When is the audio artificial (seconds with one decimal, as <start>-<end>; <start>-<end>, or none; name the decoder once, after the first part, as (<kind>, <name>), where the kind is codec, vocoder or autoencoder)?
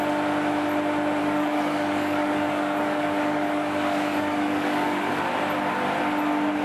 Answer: 1.2-5.2 (codec, DAC)